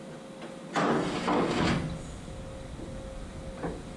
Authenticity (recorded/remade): recorded